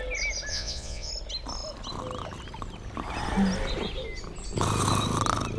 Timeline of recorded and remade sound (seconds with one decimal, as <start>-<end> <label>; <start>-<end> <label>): 0.0-0.5 recorded; 0.5-1.1 remade; 1.1-5.6 recorded